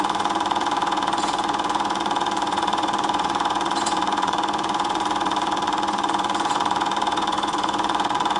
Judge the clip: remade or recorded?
remade